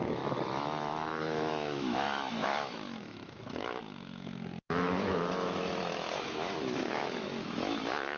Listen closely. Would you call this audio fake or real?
fake